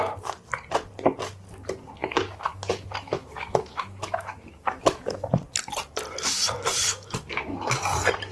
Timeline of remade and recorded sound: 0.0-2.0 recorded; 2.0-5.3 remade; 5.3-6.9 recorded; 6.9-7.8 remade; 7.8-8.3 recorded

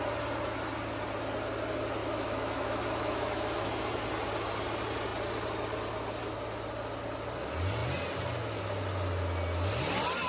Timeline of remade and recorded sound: 0.0-2.0 recorded; 2.0-3.7 remade; 3.7-10.3 recorded

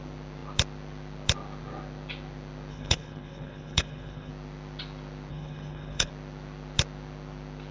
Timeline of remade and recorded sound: 0.0-2.7 recorded; 2.7-4.3 remade; 4.3-5.3 recorded; 5.3-6.1 remade; 6.1-7.7 recorded

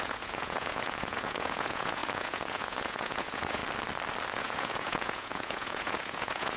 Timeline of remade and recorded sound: 0.0-3.6 remade; 3.6-4.3 recorded; 4.3-6.6 remade

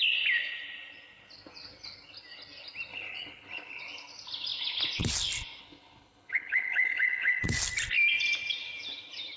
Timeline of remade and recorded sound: 0.0-2.9 recorded; 2.9-3.8 remade; 3.8-5.6 recorded; 5.6-7.4 remade; 7.4-9.4 recorded

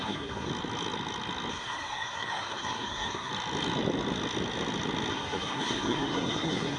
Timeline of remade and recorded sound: 0.0-0.5 remade; 0.5-1.5 recorded; 1.5-3.3 remade; 3.3-5.1 recorded; 5.1-6.8 remade

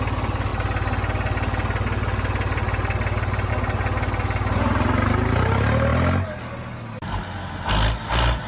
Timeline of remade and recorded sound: 0.0-8.5 recorded